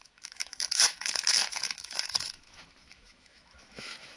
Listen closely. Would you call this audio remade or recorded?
remade